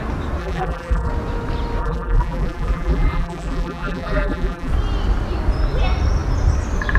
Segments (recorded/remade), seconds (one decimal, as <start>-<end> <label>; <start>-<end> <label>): 0.0-0.4 recorded; 0.4-1.1 remade; 1.1-1.8 recorded; 1.8-4.7 remade; 4.7-7.0 recorded